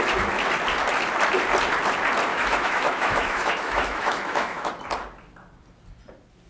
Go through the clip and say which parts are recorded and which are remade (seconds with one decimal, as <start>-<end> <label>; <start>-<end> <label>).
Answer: 0.0-2.3 recorded; 2.3-4.7 remade; 4.7-6.5 recorded